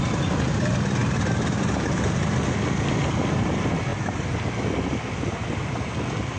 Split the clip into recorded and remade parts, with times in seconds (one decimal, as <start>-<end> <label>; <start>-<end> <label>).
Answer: 0.0-6.4 recorded